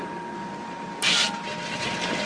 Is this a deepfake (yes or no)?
no